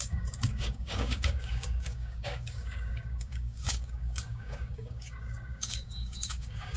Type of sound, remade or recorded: remade